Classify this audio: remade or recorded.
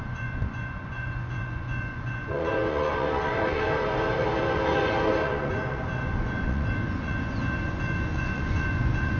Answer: remade